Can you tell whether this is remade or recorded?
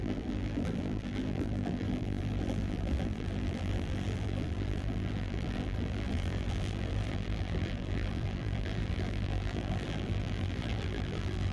remade